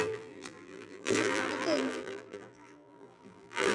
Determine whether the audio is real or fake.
fake